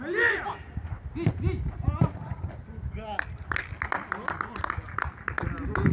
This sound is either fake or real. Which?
real